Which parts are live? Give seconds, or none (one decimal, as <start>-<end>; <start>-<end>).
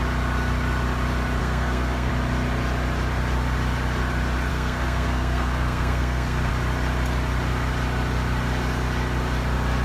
0.0-1.4; 2.1-4.5; 6.5-9.8